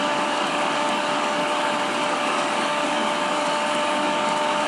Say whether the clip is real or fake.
fake